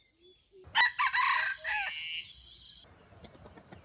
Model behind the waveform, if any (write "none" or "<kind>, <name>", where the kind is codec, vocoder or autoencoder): none